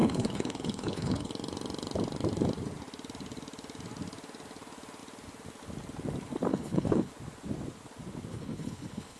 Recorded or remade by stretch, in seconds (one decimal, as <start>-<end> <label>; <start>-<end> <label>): 0.0-1.3 remade; 1.3-6.5 recorded; 6.5-7.1 remade; 7.1-8.3 recorded; 8.3-9.2 remade